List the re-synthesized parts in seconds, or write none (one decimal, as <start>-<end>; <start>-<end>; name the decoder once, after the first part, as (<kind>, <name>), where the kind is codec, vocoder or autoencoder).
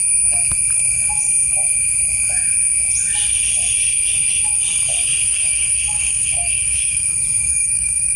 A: 5.2-7.1 (autoencoder, DAC-VAE); 7.5-8.2